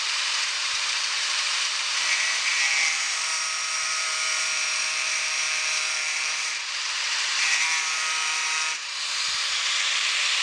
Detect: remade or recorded remade